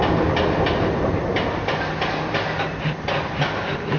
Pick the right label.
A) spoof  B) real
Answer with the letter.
B